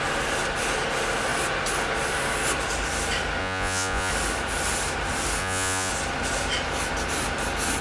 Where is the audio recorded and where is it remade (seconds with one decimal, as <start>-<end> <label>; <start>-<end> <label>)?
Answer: 0.0-3.4 recorded; 3.4-4.1 remade; 4.1-5.4 recorded; 5.4-5.9 remade; 5.9-7.8 recorded